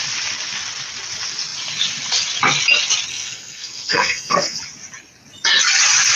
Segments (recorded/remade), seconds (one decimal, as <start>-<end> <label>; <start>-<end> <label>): 0.0-3.1 recorded; 3.1-4.6 remade; 4.6-6.2 recorded